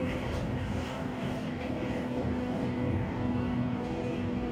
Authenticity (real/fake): fake